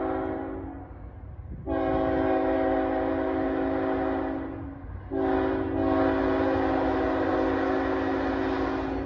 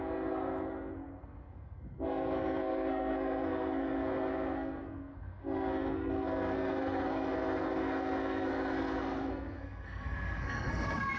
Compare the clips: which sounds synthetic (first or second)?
second